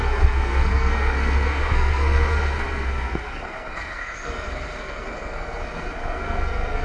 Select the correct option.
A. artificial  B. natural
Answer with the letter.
A